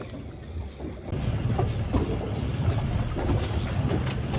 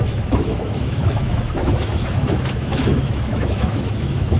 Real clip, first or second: first